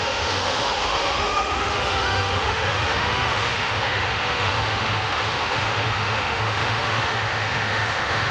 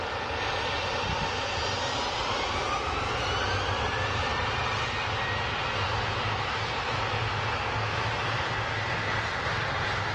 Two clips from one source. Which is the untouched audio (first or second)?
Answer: second